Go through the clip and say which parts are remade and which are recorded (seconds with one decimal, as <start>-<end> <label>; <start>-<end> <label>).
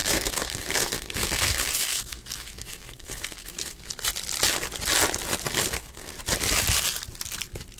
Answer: 0.0-3.9 remade; 3.9-5.6 recorded; 5.6-6.1 remade; 6.1-7.8 recorded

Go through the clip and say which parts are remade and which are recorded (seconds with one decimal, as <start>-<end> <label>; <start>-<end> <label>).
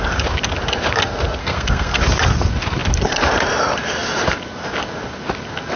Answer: 0.0-1.4 recorded; 1.4-2.0 remade; 2.0-5.8 recorded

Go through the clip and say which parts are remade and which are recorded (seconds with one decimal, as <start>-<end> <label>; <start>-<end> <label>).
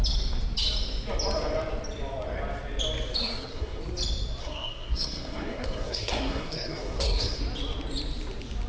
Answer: 0.0-3.2 recorded; 3.2-3.8 remade; 3.8-4.4 recorded; 4.4-7.4 remade; 7.4-8.7 recorded